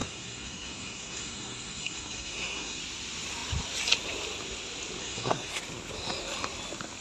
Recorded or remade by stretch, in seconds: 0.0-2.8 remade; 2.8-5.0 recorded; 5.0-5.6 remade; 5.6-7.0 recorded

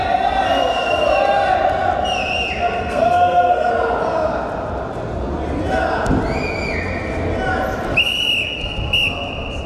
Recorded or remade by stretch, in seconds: 0.0-2.8 recorded; 2.8-3.7 remade; 3.7-9.7 recorded

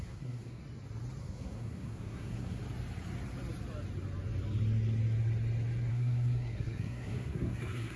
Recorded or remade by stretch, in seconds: 0.0-0.6 remade; 0.6-1.2 recorded; 1.2-2.6 remade; 2.6-5.9 recorded; 5.9-8.0 remade

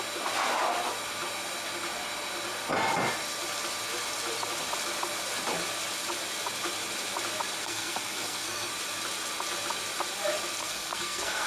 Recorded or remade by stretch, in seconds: 0.0-7.6 recorded; 7.6-8.7 remade; 8.7-10.6 recorded; 10.6-11.5 remade

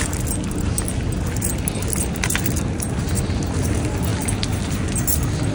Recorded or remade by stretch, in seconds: 0.0-5.5 recorded

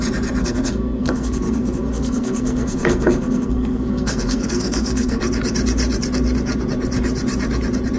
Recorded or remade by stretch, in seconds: 0.0-0.4 recorded; 0.4-5.2 remade; 5.2-8.0 recorded

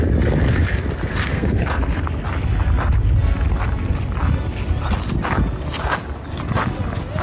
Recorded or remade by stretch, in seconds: 0.0-1.3 recorded; 1.3-1.8 remade; 1.8-7.2 recorded